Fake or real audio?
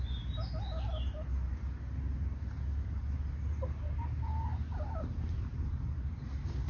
real